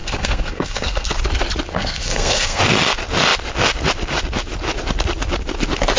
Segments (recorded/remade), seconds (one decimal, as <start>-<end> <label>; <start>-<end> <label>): 0.0-1.1 remade; 1.1-1.7 recorded; 1.7-2.6 remade; 2.6-6.0 recorded